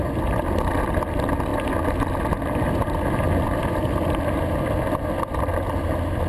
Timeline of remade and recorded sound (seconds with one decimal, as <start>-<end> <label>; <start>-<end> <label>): 0.0-6.3 recorded